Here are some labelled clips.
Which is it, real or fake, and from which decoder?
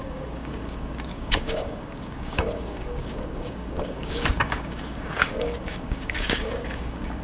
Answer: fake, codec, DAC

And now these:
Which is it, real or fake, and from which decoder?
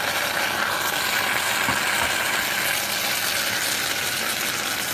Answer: real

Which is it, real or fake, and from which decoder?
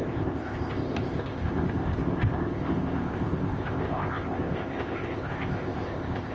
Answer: fake, codec, ZipCodec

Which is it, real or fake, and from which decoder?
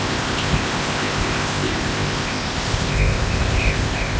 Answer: fake, codec, ZipCodec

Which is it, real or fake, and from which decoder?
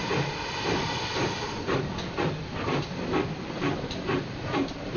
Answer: fake, vocoder, BigVGAN v2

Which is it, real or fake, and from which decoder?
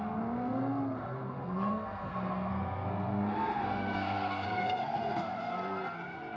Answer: fake, codec, SNAC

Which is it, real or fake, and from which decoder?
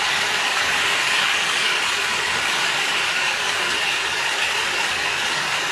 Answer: fake, codec, DAC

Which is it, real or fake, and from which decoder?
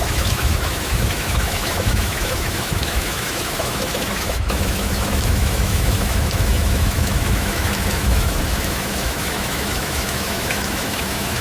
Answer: fake, autoencoder, DAC-VAE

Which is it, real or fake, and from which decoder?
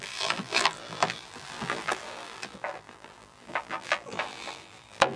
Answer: fake, vocoder, BigVGAN v2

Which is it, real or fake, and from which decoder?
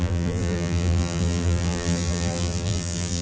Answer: fake, vocoder, BigVGAN v2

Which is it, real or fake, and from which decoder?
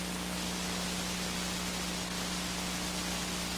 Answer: real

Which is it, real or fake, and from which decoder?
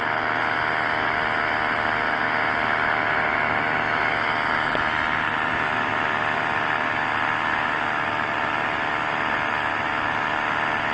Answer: real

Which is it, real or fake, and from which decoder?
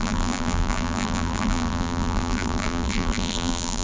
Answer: fake, vocoder, BigVGAN v2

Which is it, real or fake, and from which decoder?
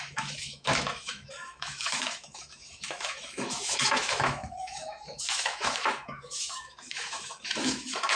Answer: fake, autoencoder, DAC-VAE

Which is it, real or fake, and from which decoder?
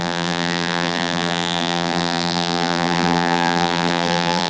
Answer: fake, vocoder, BigVGAN v2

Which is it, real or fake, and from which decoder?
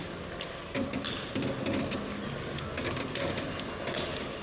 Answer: real